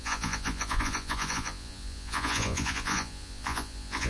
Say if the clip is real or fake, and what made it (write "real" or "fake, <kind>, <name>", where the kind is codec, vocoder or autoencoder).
fake, vocoder, Vocos